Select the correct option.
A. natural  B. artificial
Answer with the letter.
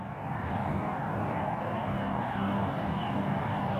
B